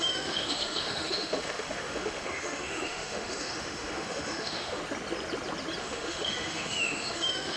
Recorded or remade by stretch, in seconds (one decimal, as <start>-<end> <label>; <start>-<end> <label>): 0.0-4.8 remade; 4.8-5.8 recorded; 5.8-7.6 remade